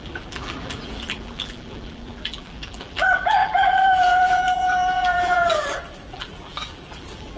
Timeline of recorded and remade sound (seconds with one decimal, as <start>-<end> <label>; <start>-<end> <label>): 0.0-7.4 remade